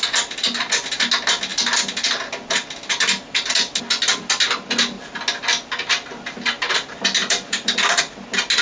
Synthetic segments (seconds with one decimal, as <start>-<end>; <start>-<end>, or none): 7.2-8.0